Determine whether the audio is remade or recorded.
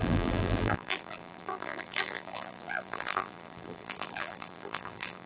remade